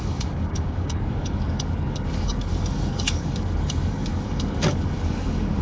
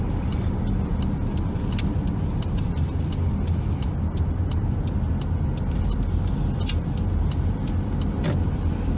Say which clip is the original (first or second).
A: second